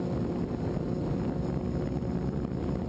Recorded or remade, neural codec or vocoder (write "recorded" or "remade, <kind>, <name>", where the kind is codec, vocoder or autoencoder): recorded